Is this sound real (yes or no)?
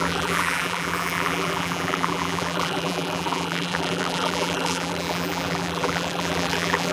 no